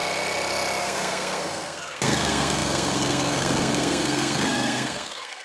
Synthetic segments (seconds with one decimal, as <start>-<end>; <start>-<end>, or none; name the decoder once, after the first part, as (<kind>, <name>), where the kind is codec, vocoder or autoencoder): 0.8-5.4 (codec, SNAC)